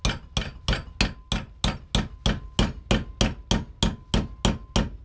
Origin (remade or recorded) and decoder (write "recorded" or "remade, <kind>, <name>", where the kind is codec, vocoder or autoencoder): recorded